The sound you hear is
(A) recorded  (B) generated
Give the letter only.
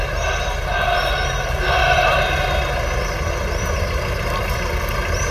A